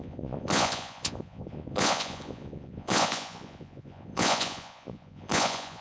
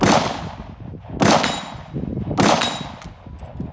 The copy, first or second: first